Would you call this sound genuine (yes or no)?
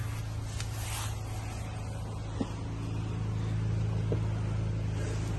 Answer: yes